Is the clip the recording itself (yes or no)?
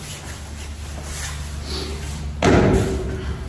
yes